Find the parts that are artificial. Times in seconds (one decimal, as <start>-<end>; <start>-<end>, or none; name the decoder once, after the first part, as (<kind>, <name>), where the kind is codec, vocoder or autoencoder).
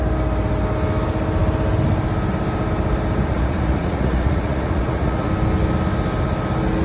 3.3-5.3 (vocoder, Vocos)